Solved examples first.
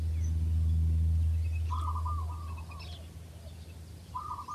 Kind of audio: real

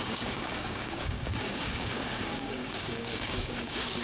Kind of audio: fake